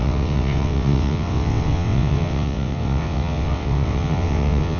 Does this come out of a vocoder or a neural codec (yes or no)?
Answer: yes